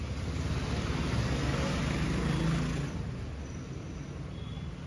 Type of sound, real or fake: real